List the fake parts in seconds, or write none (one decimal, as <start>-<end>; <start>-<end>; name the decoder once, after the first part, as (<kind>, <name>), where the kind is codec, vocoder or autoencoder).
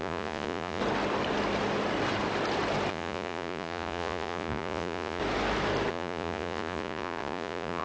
0.0-0.8 (vocoder, Vocos); 2.9-5.2; 5.9-7.8